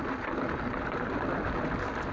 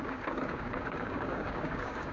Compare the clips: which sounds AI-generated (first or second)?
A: second